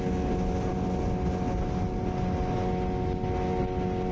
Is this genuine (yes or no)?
yes